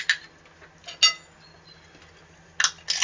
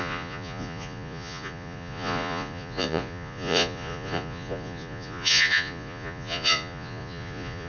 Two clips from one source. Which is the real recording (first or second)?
first